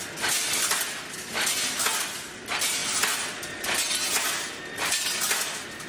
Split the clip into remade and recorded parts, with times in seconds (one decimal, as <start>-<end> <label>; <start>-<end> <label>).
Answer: 0.0-5.9 recorded